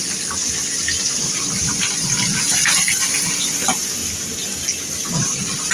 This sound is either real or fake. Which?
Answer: real